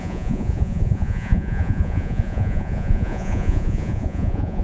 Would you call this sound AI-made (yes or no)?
yes